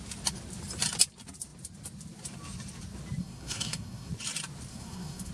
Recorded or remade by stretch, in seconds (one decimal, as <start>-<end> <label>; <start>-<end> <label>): 0.0-3.2 recorded; 3.2-4.1 remade; 4.1-4.7 recorded; 4.7-5.3 remade

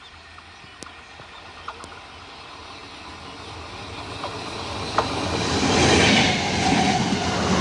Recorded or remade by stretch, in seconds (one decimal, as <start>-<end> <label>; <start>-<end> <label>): 0.0-7.6 recorded

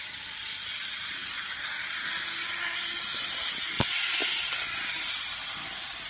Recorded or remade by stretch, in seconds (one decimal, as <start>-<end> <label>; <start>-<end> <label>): 0.0-6.1 recorded

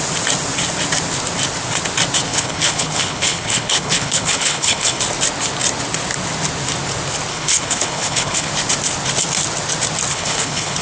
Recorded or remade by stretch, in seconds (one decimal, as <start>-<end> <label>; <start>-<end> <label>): 0.0-2.3 recorded; 2.3-5.0 remade; 5.0-7.3 recorded; 7.3-8.5 remade; 8.5-10.1 recorded; 10.1-10.8 remade

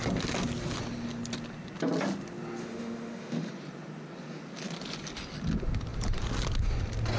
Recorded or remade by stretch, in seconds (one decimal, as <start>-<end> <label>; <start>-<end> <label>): 0.0-2.6 recorded; 2.6-3.5 remade; 3.5-7.2 recorded